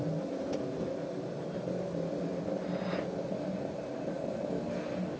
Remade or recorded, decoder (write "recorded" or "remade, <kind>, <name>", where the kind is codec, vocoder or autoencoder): recorded